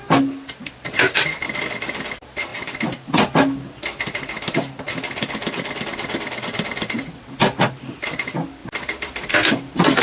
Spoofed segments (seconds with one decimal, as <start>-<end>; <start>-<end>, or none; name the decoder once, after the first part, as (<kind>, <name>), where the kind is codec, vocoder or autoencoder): none